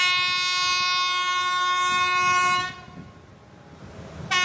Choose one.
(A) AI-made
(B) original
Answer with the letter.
B